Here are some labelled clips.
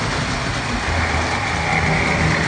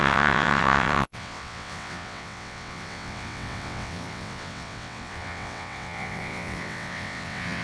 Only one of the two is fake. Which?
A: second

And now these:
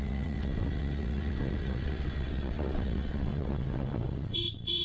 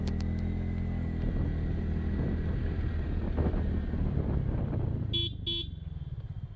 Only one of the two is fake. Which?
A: first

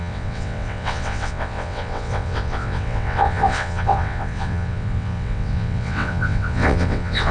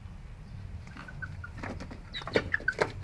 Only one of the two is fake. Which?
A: first